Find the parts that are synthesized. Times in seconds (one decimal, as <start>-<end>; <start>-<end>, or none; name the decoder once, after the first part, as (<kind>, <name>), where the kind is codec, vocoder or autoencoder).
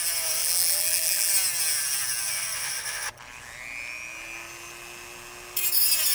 0.4-1.3 (vocoder, BigVGAN v2)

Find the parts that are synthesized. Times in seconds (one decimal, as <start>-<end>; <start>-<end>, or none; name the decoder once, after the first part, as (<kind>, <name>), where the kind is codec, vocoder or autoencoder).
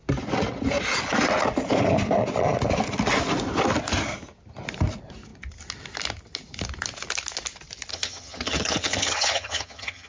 7.9-10.1 (vocoder, HiFi-GAN)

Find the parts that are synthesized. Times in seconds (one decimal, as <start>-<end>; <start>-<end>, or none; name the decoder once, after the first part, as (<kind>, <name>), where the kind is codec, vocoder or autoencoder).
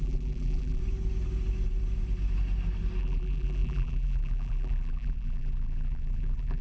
0.0-0.8 (vocoder, BigVGAN v2); 3.0-6.6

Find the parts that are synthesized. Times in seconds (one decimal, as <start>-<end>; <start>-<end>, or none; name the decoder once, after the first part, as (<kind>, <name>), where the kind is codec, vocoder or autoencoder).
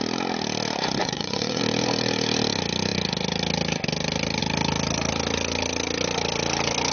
1.0-1.6 (vocoder, Vocos)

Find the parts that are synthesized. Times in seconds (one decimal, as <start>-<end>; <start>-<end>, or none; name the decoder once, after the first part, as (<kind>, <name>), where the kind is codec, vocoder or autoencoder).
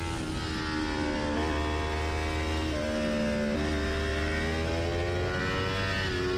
none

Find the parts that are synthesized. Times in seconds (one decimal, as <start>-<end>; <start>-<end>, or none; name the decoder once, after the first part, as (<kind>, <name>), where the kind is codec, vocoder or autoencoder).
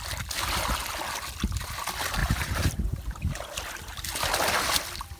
2.2-3.3 (vocoder, BigVGAN v2)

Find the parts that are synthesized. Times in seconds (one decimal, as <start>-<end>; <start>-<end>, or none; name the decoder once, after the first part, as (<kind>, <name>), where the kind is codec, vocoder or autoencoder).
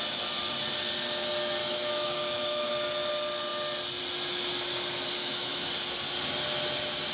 1.6-2.7 (autoencoder, DAC-VAE); 5.2-5.7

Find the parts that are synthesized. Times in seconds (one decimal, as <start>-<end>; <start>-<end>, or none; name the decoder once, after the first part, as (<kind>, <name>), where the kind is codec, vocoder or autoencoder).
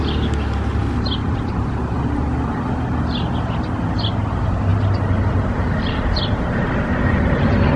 0.8-1.6 (vocoder, BigVGAN v2)